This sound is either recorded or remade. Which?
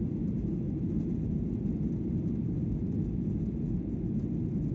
recorded